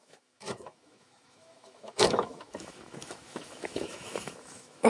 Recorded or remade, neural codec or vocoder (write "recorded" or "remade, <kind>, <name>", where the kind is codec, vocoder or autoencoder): remade, autoencoder, DAC-VAE